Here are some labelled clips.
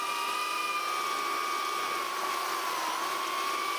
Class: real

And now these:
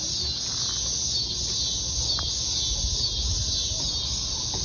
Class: real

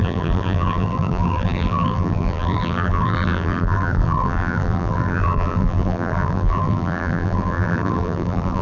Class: fake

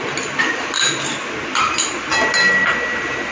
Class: real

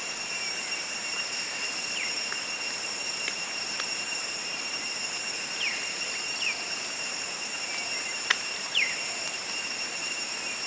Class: fake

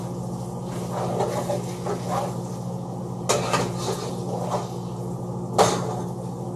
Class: real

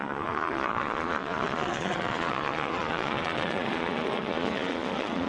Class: fake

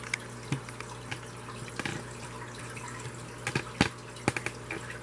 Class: real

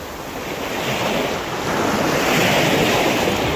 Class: real